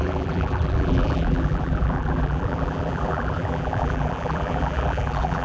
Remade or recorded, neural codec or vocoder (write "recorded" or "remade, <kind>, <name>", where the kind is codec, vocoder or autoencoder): remade, vocoder, BigVGAN v2